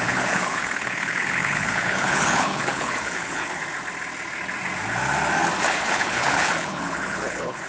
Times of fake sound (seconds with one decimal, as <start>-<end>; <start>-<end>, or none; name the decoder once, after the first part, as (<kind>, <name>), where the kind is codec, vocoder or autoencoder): 0.0-3.6 (codec, HILCodec); 5.7-7.7